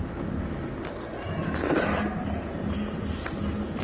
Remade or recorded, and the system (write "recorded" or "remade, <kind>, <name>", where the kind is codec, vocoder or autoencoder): recorded